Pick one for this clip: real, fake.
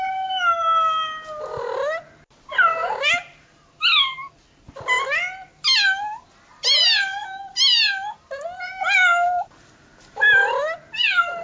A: real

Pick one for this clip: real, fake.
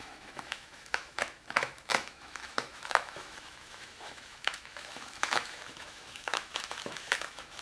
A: fake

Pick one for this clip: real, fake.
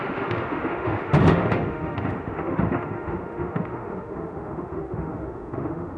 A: fake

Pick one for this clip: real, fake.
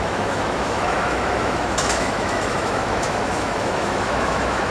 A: fake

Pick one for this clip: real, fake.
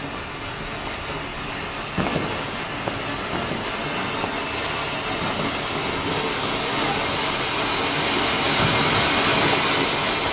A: real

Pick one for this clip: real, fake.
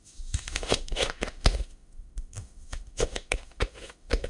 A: fake